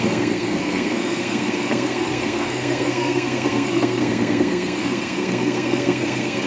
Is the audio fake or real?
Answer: fake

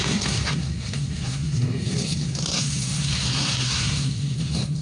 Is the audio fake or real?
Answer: fake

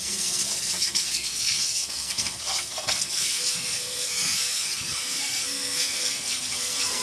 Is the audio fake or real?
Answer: fake